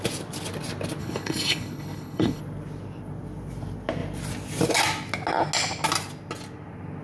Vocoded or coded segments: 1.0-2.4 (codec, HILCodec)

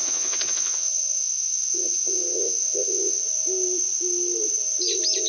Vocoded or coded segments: 0.0-3.2 (vocoder, Vocos)

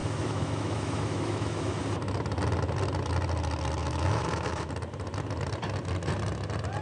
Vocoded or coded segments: 0.0-1.8 (autoencoder, DAC-VAE); 3.8-4.7

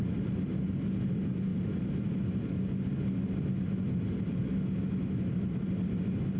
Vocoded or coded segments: none

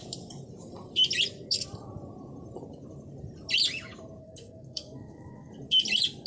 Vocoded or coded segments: 4.2-5.5 (codec, SNAC)

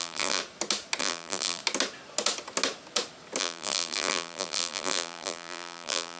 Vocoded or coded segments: 0.0-0.4 (vocoder, BigVGAN v2); 1.0-1.6; 3.4-6.2

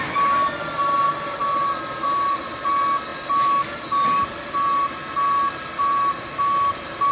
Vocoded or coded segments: none